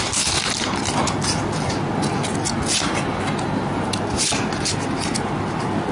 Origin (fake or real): real